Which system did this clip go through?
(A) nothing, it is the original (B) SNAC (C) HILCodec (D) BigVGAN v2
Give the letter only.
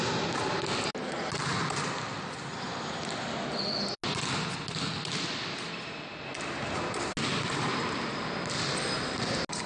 A